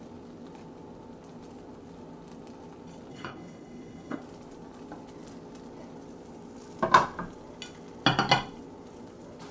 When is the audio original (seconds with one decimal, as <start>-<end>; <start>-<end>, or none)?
0.0-3.1; 4.2-9.5